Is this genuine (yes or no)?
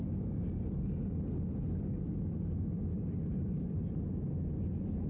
yes